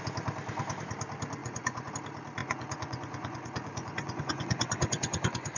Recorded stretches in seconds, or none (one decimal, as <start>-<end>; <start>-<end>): 0.0-1.4; 1.9-2.4

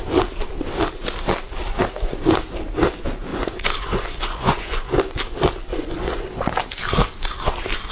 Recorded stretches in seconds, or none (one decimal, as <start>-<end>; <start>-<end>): 0.0-3.3; 5.0-5.7; 6.4-7.9

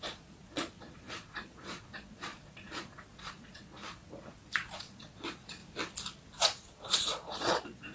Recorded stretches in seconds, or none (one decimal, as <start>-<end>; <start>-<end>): 3.8-4.3; 5.6-6.4

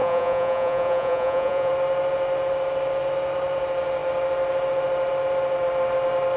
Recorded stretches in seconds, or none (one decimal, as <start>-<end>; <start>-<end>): 1.7-6.4

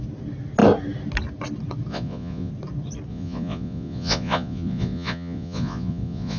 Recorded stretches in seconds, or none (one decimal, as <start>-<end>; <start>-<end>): 0.0-1.9; 2.5-3.1